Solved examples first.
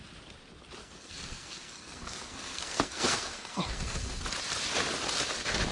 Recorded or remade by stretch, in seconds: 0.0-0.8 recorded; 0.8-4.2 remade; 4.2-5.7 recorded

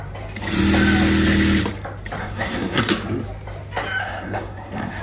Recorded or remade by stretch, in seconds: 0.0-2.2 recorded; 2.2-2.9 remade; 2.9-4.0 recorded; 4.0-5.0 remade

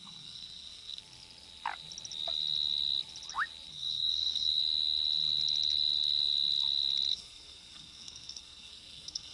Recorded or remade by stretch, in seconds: 0.0-1.0 remade; 1.0-3.7 recorded; 3.7-4.6 remade; 4.6-7.1 recorded; 7.1-9.3 remade